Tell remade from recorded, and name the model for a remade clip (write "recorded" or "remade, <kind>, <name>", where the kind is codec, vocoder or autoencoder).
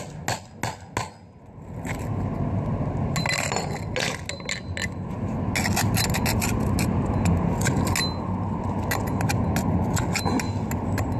recorded